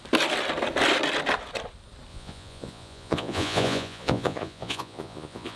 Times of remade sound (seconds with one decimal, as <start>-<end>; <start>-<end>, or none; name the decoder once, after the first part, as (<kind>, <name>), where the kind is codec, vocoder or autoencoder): 2.1-5.6 (vocoder, Vocos)